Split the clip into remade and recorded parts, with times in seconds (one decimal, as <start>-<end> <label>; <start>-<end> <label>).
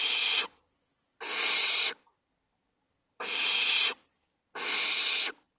0.0-5.6 recorded